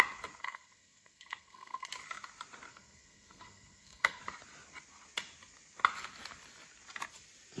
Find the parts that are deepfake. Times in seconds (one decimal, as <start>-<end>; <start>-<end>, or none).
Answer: 0.4-1.9; 2.7-4.2